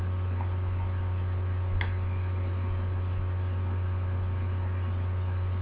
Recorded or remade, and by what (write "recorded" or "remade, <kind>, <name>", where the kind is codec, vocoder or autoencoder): recorded